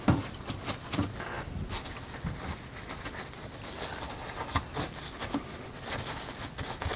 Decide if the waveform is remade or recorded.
recorded